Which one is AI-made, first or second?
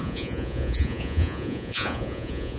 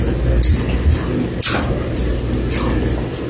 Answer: first